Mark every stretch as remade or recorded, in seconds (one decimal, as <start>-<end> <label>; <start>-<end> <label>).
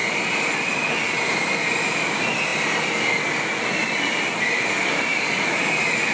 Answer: 0.0-6.1 recorded